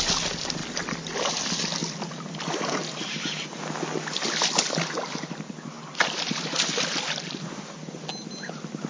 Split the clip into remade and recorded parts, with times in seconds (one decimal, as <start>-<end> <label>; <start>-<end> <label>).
0.0-8.9 recorded